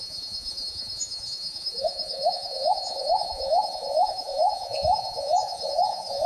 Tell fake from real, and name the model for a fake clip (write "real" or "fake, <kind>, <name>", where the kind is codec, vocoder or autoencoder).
fake, vocoder, Vocos